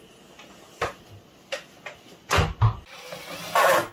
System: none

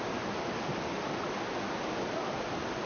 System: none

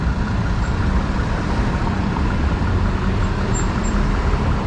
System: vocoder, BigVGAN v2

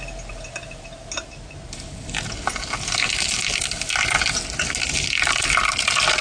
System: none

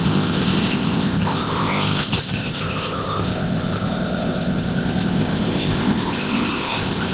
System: codec, ZipCodec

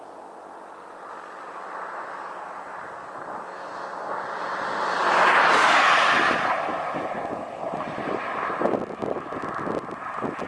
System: none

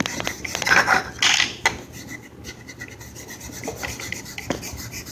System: none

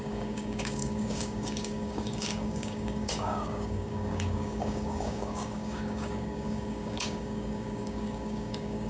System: codec, DAC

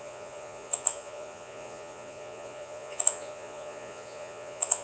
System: vocoder, Vocos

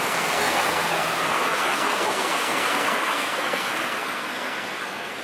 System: codec, SNAC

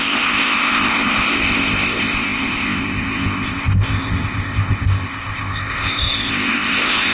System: codec, ZipCodec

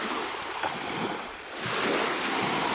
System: none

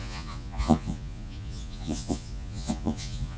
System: vocoder, Vocos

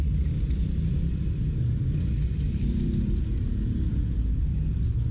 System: vocoder, BigVGAN v2